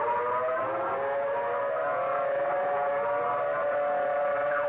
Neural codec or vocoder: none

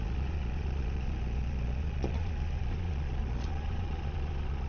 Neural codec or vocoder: vocoder, Vocos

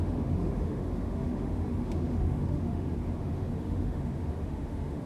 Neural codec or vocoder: autoencoder, DAC-VAE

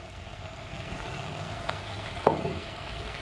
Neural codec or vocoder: codec, SNAC